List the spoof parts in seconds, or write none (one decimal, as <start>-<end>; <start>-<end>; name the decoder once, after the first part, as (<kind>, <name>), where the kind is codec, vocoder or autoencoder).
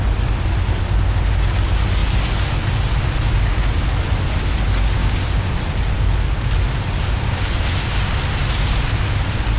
5.0-5.5 (codec, DAC)